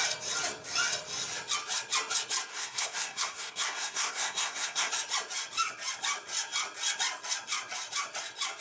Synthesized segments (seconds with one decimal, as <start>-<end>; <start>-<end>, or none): 2.5-4.9